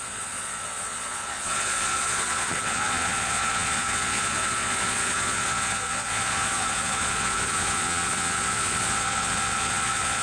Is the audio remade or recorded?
remade